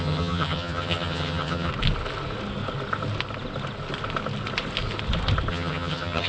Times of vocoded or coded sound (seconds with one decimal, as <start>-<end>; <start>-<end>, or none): 0.0-1.7; 5.5-6.3